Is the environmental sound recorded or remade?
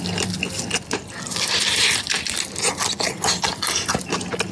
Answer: recorded